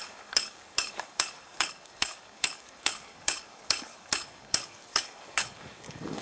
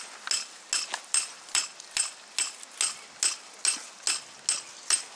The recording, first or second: second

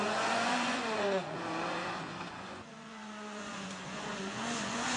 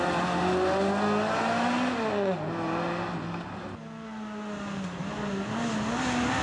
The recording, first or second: second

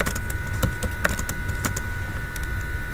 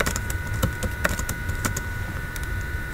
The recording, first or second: first